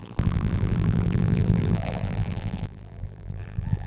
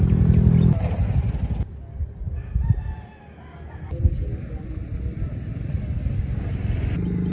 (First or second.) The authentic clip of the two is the second